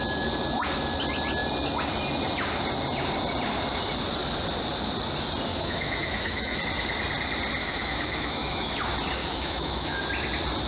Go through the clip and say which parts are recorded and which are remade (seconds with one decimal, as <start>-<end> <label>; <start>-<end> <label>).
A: 0.0-5.5 recorded; 5.5-6.6 remade; 6.6-7.6 recorded; 7.6-8.7 remade; 8.7-9.2 recorded; 9.2-10.0 remade; 10.0-10.7 recorded